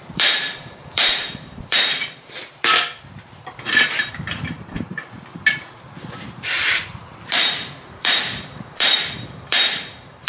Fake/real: fake